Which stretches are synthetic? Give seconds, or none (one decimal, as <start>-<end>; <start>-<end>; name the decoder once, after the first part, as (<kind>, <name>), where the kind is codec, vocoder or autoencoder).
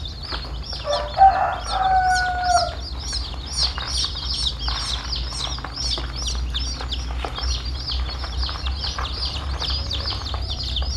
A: 3.6-4.5 (vocoder, BigVGAN v2)